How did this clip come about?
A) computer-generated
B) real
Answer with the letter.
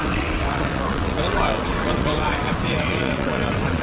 A